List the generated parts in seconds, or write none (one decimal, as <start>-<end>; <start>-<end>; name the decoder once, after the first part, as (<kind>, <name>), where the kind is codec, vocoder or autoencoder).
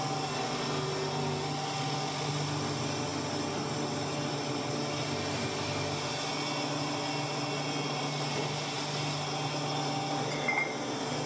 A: none